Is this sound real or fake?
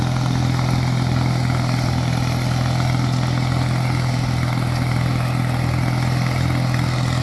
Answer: real